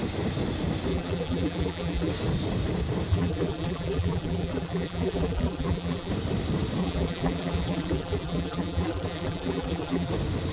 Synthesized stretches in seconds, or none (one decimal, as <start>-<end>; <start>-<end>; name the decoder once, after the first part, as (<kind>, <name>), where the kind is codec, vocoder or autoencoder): 0.9-2.1 (vocoder, BigVGAN v2); 3.1-6.1; 6.8-10.1